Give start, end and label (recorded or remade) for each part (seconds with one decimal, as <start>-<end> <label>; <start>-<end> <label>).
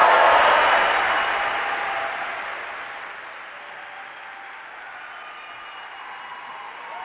0.0-7.0 recorded